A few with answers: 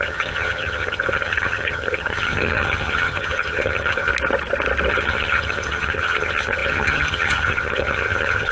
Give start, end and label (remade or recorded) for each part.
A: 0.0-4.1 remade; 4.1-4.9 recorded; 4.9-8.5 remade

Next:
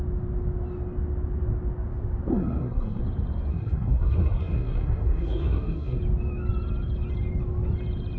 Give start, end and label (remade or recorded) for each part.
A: 0.0-2.3 recorded; 2.3-3.0 remade; 3.0-3.5 recorded; 3.5-6.0 remade; 6.0-8.2 recorded